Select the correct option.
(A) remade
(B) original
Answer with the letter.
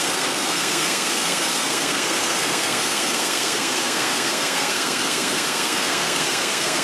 A